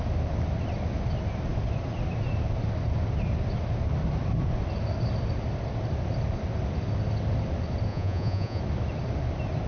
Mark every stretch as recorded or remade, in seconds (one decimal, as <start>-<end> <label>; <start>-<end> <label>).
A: 0.0-7.9 recorded; 7.9-8.6 remade; 8.6-9.7 recorded